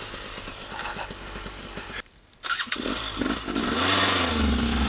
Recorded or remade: recorded